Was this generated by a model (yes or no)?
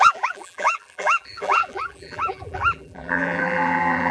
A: yes